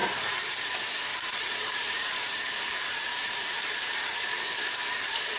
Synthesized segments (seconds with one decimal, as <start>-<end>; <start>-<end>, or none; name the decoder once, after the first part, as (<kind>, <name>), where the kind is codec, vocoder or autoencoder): 0.0-0.7 (vocoder, BigVGAN v2); 1.1-4.3